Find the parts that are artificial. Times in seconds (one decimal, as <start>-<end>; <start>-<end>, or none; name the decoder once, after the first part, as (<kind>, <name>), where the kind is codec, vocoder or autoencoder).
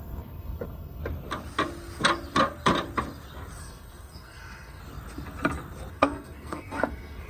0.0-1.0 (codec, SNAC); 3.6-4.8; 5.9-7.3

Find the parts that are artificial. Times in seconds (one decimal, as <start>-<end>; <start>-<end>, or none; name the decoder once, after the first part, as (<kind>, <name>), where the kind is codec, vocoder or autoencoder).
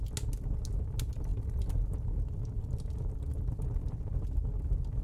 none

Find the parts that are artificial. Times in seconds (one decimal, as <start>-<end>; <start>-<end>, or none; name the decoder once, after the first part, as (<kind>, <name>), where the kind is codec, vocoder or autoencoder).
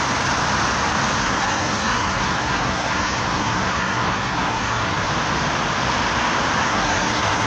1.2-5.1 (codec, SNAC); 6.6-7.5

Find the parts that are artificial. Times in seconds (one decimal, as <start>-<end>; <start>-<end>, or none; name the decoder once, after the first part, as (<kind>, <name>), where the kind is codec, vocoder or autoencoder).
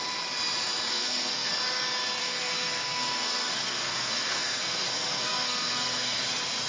0.9-1.5 (codec, SNAC); 2.2-6.2